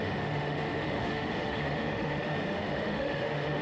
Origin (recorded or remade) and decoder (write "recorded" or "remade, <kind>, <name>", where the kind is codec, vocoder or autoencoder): remade, autoencoder, DAC-VAE